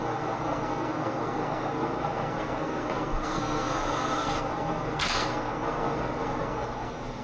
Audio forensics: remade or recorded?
remade